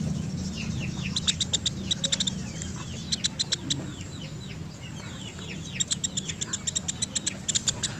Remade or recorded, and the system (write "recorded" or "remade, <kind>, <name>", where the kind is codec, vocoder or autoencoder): recorded